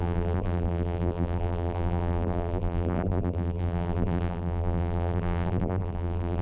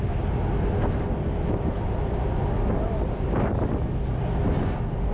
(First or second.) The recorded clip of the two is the second